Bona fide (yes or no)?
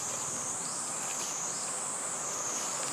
yes